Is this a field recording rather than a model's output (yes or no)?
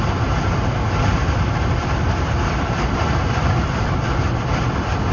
yes